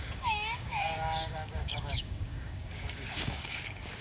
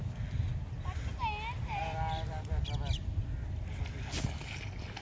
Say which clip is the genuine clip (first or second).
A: second